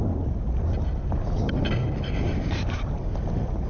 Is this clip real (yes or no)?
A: yes